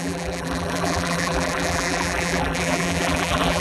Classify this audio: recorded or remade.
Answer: remade